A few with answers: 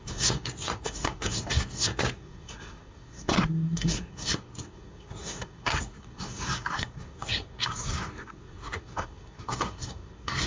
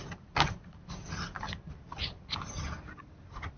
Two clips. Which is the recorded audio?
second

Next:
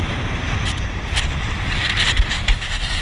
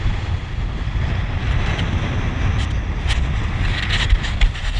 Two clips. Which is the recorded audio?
second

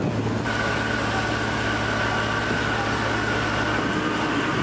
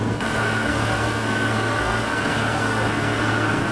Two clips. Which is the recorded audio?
first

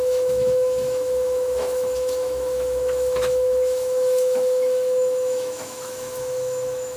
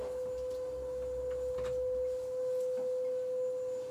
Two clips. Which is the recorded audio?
second